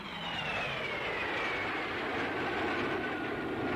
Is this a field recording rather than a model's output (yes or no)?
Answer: yes